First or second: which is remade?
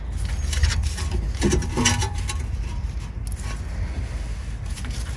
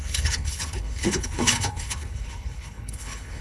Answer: second